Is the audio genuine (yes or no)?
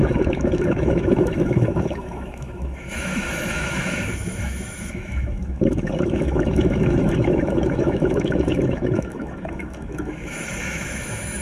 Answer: no